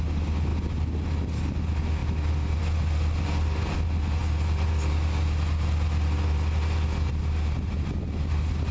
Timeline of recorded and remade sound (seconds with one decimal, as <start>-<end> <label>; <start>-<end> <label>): 0.0-8.7 recorded

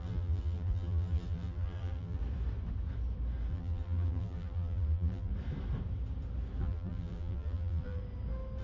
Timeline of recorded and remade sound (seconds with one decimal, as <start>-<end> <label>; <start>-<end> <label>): 0.0-2.2 remade; 2.2-3.5 recorded; 3.5-5.3 remade; 5.3-6.6 recorded; 6.6-8.0 remade; 8.0-8.6 recorded

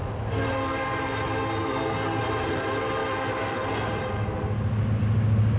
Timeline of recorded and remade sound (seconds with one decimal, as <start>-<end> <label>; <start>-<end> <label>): 0.0-1.6 recorded; 1.6-2.2 remade; 2.2-5.6 recorded

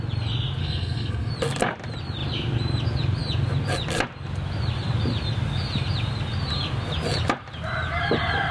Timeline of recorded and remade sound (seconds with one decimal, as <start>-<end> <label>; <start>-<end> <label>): 0.0-0.6 recorded; 0.6-1.3 remade; 1.3-8.5 recorded

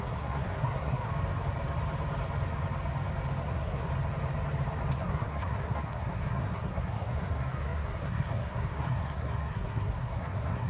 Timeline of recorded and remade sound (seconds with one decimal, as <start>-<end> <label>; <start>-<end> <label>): 0.0-1.1 remade; 1.1-3.4 recorded; 3.4-3.9 remade; 3.9-4.9 recorded; 4.9-10.7 remade

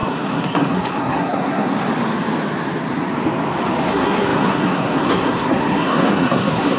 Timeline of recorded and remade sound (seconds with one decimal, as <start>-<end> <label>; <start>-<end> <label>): 0.0-1.8 remade; 1.8-3.9 recorded; 3.9-6.8 remade

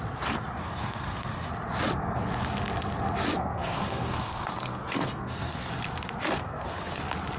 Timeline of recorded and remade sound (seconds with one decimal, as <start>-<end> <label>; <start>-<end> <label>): 0.0-0.6 recorded; 0.6-1.5 remade; 1.5-3.3 recorded; 3.3-5.7 remade; 5.7-6.4 recorded; 6.4-7.0 remade; 7.0-7.4 recorded

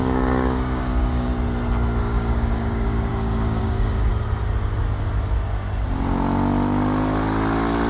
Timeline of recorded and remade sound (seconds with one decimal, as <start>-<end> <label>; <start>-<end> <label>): 0.0-1.3 remade; 1.3-2.0 recorded; 2.0-4.1 remade; 4.1-7.9 recorded